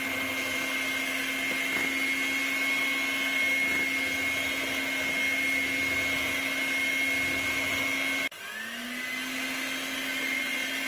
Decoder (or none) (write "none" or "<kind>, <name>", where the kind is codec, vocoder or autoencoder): none